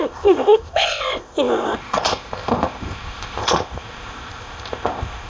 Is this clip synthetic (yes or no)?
yes